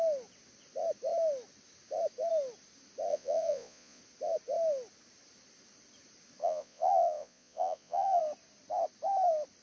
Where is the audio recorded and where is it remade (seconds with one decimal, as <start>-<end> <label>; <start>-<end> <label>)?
0.0-3.1 recorded; 3.1-4.0 remade; 4.0-6.4 recorded; 6.4-8.2 remade; 8.2-9.6 recorded